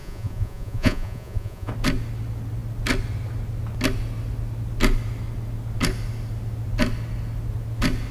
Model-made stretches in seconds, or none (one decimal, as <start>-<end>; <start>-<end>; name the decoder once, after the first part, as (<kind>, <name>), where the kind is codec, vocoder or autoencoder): 0.0-1.7 (vocoder, Vocos)